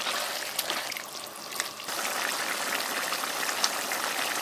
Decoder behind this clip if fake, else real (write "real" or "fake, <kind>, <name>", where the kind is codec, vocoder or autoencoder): real